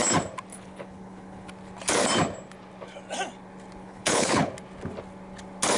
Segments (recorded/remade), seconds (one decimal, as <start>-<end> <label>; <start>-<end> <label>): 0.0-0.5 recorded; 0.5-1.5 remade; 1.5-3.8 recorded; 3.8-4.5 remade; 4.5-5.8 recorded